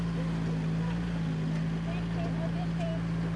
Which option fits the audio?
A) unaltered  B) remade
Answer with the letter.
A